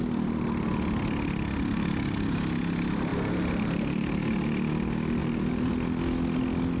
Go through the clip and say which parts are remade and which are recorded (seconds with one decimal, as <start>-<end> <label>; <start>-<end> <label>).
0.0-3.1 recorded; 3.1-4.2 remade; 4.2-5.2 recorded; 5.2-5.7 remade; 5.7-6.8 recorded